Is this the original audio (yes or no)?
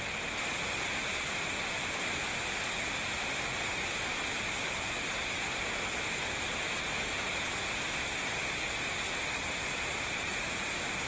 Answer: yes